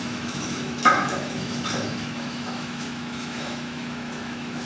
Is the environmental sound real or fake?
fake